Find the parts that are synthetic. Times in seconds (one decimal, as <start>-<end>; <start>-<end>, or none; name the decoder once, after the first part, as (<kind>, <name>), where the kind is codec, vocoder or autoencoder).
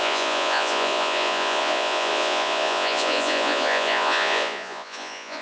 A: 0.0-5.4 (vocoder, Vocos)